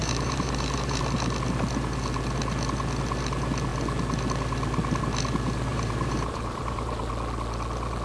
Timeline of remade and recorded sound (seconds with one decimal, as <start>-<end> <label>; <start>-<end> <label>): 0.0-1.0 remade; 1.0-5.7 recorded; 5.7-7.1 remade; 7.1-8.0 recorded